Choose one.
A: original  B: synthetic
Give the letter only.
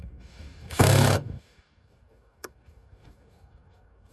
B